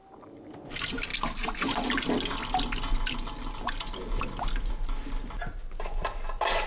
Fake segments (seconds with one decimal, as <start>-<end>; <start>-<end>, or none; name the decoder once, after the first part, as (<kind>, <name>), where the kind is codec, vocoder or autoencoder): none